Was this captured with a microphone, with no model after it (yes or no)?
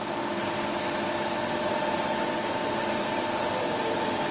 yes